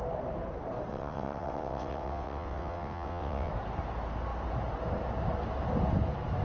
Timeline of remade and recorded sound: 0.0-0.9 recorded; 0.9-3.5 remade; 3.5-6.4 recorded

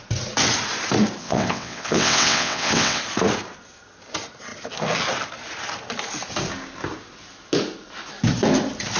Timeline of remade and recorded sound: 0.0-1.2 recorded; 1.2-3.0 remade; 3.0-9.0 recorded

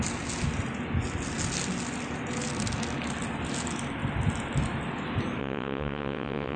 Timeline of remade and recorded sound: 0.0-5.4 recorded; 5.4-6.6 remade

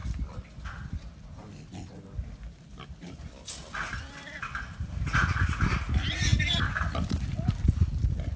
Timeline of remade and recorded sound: 0.0-8.4 recorded

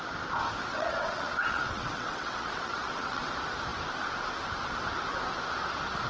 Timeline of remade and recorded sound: 0.0-0.6 recorded; 0.6-3.3 remade; 3.3-6.1 recorded